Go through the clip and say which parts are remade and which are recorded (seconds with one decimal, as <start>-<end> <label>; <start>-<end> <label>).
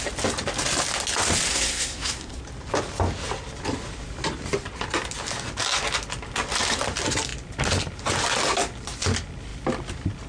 0.0-1.5 recorded; 1.5-2.4 remade; 2.4-10.3 recorded